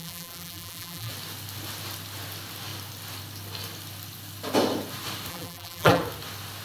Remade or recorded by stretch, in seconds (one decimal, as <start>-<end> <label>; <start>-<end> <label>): 0.0-1.1 remade; 1.1-5.3 recorded; 5.3-6.0 remade; 6.0-6.6 recorded